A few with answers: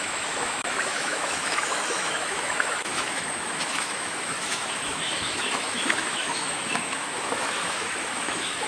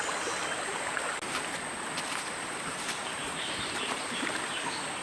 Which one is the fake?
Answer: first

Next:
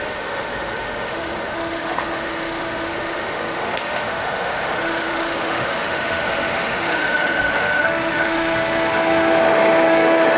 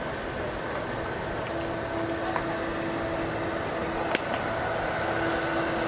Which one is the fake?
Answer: first